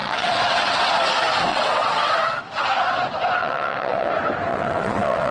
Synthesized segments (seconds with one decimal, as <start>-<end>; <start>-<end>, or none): 0.0-0.9; 1.5-2.4; 3.4-4.1; 4.5-5.3